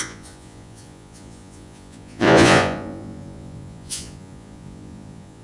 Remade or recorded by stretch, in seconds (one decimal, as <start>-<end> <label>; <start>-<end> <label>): 0.0-5.4 remade